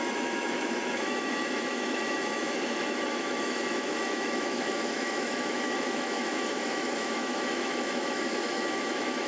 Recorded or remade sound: remade